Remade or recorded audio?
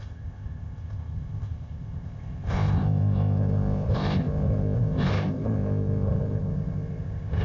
remade